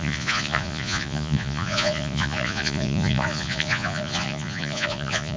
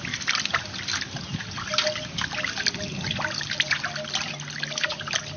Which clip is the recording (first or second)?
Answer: second